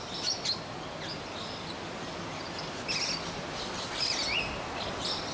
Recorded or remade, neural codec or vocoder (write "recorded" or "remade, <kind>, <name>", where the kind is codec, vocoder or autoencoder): recorded